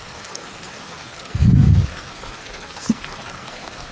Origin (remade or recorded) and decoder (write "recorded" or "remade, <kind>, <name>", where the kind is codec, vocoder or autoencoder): remade, codec, SNAC